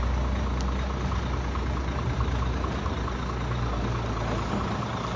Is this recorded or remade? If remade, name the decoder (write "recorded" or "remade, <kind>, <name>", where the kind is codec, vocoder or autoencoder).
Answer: recorded